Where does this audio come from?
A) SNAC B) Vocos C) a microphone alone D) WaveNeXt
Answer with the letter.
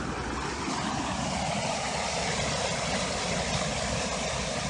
C